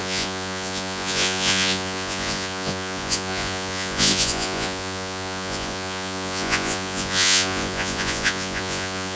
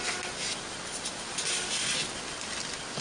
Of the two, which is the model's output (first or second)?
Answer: first